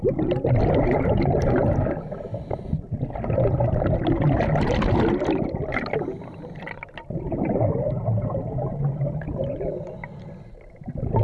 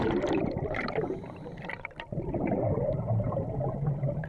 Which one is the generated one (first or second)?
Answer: second